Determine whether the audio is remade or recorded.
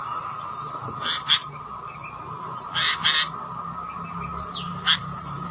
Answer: recorded